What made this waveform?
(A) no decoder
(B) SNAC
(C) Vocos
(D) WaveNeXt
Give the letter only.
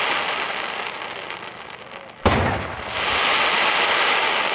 A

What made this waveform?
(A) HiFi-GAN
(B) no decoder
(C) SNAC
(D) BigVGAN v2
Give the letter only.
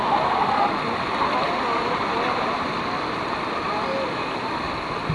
B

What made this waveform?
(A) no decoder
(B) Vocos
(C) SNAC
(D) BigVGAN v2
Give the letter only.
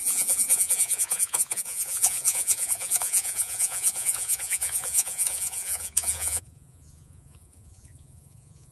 B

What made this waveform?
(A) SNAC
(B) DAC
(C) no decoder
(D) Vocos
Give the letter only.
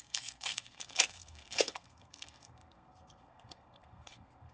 A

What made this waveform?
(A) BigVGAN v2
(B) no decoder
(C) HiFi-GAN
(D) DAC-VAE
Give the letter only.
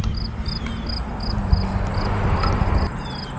B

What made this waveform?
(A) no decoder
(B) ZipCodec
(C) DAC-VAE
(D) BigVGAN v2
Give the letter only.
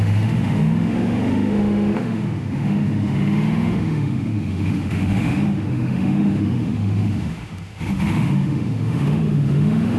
C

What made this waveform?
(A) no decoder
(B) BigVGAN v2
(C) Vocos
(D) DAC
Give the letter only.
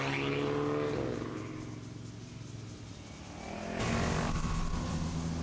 A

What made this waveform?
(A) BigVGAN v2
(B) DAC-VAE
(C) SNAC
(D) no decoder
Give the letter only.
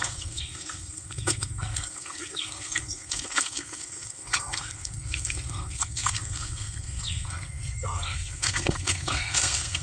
C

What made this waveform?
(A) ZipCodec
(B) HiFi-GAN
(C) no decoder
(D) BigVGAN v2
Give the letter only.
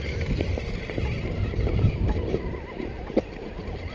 C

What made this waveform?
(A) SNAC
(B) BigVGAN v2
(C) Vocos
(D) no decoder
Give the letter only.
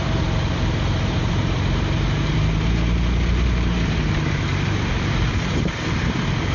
B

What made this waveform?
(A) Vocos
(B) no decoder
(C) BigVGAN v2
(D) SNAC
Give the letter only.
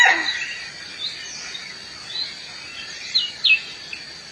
B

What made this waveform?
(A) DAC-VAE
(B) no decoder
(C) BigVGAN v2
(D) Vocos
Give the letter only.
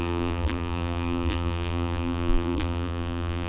C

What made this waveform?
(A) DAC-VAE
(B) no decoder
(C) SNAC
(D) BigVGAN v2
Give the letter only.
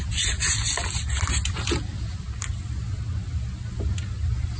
B